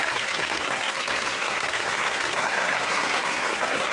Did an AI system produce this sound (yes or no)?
yes